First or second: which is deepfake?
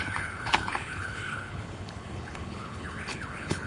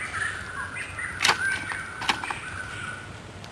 first